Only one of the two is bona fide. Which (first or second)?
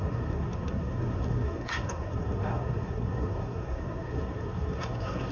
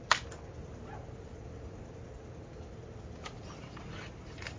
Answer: second